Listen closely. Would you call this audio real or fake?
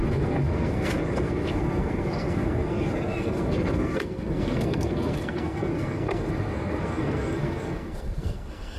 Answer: fake